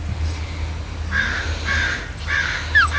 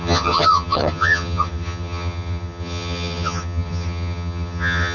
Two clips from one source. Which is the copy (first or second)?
second